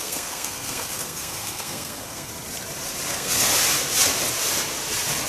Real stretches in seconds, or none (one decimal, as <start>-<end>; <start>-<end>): 2.3-3.1; 3.5-5.3